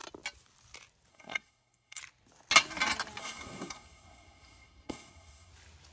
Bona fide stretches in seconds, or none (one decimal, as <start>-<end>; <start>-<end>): 0.0-1.1; 2.0-3.2; 5.5-5.9